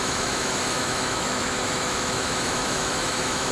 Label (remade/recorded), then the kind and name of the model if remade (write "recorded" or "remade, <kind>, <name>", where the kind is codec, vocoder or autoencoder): remade, autoencoder, DAC-VAE